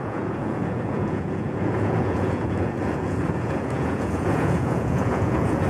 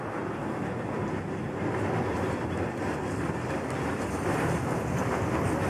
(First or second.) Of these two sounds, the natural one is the second